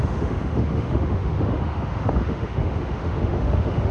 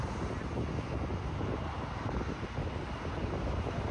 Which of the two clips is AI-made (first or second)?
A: first